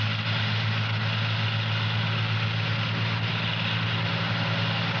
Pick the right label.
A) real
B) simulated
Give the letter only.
A